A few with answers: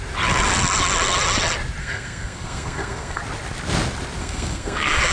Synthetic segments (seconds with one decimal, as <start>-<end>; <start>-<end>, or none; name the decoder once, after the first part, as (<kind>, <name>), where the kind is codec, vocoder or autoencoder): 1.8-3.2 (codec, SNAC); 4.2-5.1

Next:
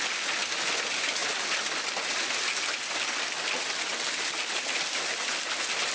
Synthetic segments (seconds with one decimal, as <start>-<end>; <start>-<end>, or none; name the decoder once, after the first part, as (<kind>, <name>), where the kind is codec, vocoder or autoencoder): none

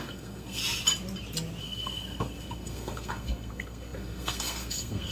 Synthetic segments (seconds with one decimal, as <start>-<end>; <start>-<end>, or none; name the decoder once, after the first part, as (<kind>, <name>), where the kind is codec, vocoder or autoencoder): 0.0-0.6 (codec, SNAC); 1.6-5.1

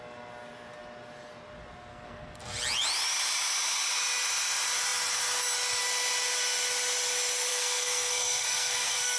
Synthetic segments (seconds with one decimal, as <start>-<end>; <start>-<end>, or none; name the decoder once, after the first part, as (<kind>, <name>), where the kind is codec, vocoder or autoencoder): 1.9-2.4 (codec, SNAC); 7.5-9.2

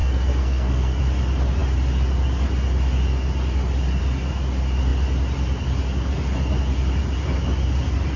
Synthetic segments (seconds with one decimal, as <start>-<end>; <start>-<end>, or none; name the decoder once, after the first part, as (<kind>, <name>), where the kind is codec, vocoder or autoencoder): 0.0-1.0 (codec, SNAC)

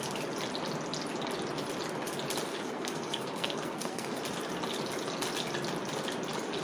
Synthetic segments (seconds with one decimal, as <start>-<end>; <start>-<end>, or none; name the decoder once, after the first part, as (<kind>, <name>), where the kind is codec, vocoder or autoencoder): 2.5-4.2 (codec, SNAC)

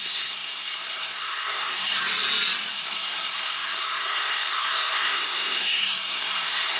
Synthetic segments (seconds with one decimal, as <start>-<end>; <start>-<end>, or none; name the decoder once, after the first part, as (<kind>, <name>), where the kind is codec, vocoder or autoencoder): 0.0-2.0 (codec, SNAC); 2.7-6.8

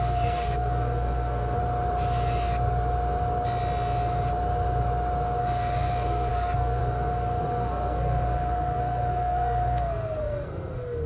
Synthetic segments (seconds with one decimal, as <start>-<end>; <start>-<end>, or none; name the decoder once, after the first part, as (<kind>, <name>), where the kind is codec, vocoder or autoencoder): 0.0-1.6 (codec, SNAC); 5.4-11.1